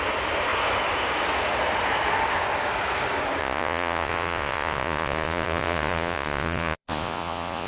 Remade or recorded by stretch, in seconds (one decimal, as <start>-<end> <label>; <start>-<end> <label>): 0.0-3.4 recorded; 3.4-7.7 remade

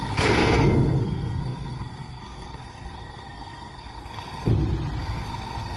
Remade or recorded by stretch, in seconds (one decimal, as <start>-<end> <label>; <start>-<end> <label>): 0.0-4.5 remade; 4.5-5.0 recorded; 5.0-5.8 remade

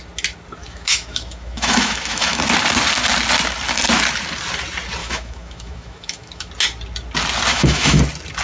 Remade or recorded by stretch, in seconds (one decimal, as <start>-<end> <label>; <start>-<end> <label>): 0.0-0.6 recorded; 0.6-2.4 remade; 2.4-5.0 recorded; 5.0-6.5 remade; 6.5-7.5 recorded; 7.5-8.0 remade; 8.0-8.4 recorded

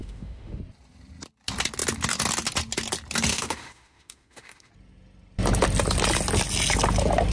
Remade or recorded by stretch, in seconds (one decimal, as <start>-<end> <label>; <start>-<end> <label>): 0.0-0.6 remade; 0.6-3.3 recorded; 3.3-4.7 remade; 4.7-7.3 recorded

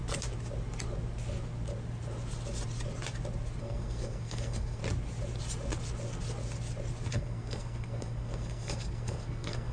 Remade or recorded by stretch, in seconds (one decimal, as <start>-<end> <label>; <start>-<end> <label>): 0.0-3.6 recorded; 3.6-4.8 remade; 4.8-7.1 recorded; 7.1-9.7 remade

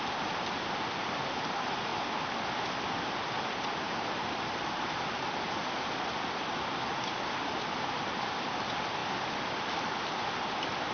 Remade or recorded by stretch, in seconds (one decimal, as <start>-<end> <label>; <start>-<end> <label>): 0.0-10.9 recorded

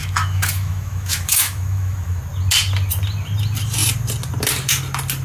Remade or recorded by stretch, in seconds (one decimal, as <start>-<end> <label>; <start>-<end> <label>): 0.0-2.2 remade; 2.2-5.2 recorded

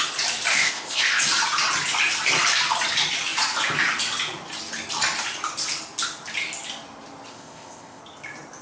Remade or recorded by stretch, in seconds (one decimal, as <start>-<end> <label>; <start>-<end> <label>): 0.0-0.5 recorded; 0.5-1.2 remade; 1.2-7.3 recorded; 7.3-8.0 remade; 8.0-8.6 recorded